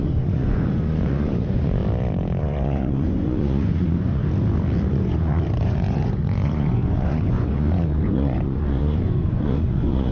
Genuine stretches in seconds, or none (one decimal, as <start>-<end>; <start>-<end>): 1.8-2.4; 4.2-4.9